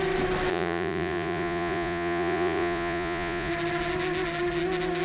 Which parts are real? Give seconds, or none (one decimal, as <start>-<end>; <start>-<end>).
0.0-0.5; 3.5-5.0